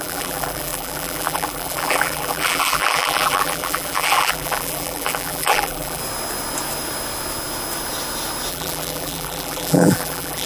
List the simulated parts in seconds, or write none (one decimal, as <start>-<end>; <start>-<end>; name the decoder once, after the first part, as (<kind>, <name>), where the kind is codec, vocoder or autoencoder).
0.0-6.0 (vocoder, BigVGAN v2); 8.5-10.5

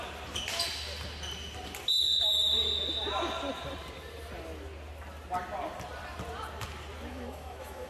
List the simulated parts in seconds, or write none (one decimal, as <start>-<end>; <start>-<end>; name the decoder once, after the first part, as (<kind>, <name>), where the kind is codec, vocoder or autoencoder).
7.1-7.9 (autoencoder, DAC-VAE)

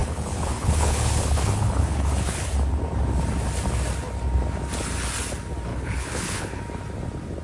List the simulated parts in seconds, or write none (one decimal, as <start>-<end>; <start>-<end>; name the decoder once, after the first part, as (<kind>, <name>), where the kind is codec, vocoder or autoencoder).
0.0-2.5 (codec, HILCodec); 5.7-6.6

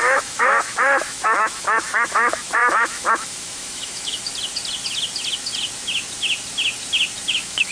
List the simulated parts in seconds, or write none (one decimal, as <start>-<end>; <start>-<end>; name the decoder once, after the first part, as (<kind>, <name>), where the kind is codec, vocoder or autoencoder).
0.0-4.3 (autoencoder, DAC-VAE); 7.3-7.7

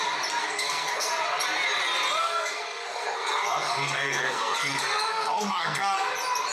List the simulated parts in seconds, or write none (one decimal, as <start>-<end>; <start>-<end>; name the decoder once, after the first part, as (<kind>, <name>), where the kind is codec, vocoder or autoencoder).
0.4-1.1 (codec, SNAC); 2.2-6.1

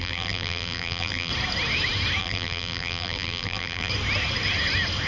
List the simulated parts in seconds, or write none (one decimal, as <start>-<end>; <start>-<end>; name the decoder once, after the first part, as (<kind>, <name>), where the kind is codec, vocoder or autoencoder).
0.0-1.3 (vocoder, BigVGAN v2); 2.2-3.9